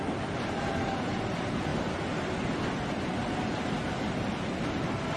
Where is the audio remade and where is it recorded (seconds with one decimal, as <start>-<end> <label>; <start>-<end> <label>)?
0.0-5.2 recorded